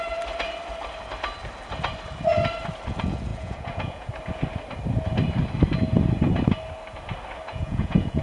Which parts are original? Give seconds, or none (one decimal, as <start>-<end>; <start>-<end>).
0.0-3.3; 4.1-7.5